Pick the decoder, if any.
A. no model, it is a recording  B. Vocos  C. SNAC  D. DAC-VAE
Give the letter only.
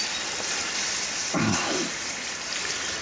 A